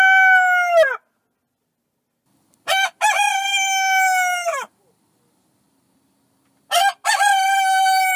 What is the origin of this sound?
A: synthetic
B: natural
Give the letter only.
B